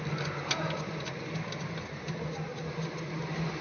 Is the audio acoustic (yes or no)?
yes